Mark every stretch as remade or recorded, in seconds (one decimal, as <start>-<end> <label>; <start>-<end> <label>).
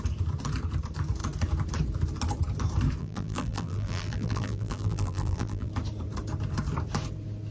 0.0-3.0 recorded; 3.0-5.7 remade; 5.7-7.5 recorded